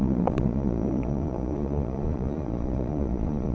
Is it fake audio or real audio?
fake